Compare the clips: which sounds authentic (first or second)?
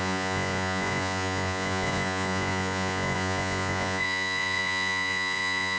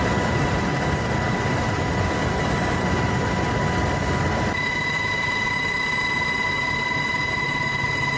second